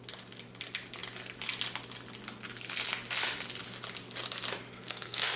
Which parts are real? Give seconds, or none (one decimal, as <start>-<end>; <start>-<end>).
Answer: 0.0-4.7